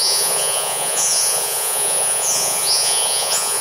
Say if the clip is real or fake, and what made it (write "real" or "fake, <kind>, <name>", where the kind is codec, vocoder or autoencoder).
fake, vocoder, Vocos